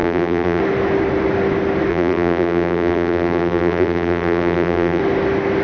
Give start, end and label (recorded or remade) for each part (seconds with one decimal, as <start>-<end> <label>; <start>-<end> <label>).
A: 0.0-0.6 remade; 0.6-1.9 recorded; 1.9-5.0 remade; 5.0-5.6 recorded

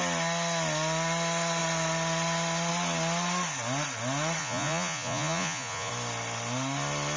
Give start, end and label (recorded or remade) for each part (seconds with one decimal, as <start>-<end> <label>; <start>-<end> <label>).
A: 0.0-4.4 recorded; 4.4-5.9 remade; 5.9-7.2 recorded

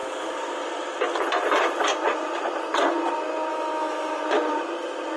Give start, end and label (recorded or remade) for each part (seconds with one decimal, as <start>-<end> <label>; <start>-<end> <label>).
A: 0.0-3.5 recorded; 3.5-4.2 remade; 4.2-5.2 recorded

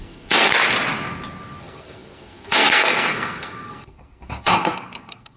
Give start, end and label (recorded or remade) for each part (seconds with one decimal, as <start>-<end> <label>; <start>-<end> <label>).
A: 0.0-0.5 remade; 0.5-1.6 recorded; 1.6-5.4 remade

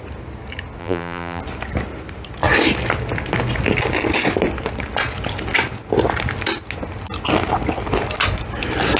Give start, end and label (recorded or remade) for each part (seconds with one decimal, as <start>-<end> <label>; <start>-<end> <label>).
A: 0.0-0.8 recorded; 0.8-1.4 remade; 1.4-9.0 recorded

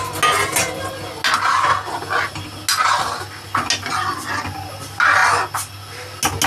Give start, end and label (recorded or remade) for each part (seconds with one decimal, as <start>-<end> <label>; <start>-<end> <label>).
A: 0.0-6.5 recorded

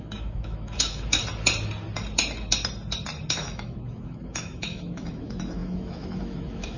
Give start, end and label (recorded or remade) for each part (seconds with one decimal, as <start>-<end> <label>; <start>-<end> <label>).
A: 0.0-1.2 remade; 1.2-3.3 recorded; 3.3-6.8 remade